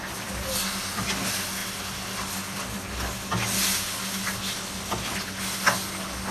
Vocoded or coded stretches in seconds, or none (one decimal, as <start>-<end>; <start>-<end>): none